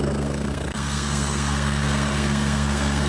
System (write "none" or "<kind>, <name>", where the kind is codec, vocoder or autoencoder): codec, SNAC